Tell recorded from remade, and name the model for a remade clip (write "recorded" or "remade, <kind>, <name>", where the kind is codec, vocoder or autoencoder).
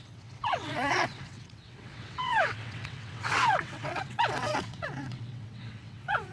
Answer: remade, vocoder, WaveNeXt